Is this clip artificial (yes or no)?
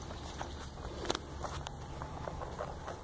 no